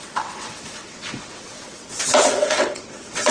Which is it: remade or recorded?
remade